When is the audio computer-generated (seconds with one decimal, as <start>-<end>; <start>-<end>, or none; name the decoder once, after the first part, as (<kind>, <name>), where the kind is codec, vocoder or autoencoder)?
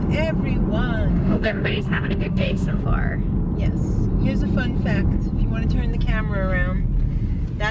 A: 1.1-2.8 (autoencoder, DAC-VAE)